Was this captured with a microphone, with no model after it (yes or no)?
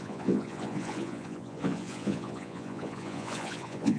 no